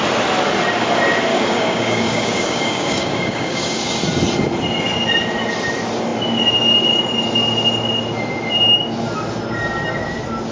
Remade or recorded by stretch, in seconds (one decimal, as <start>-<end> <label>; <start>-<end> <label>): 0.0-1.3 recorded; 1.3-3.9 remade; 3.9-10.5 recorded